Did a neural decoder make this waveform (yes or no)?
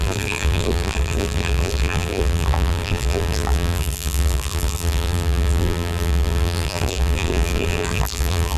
yes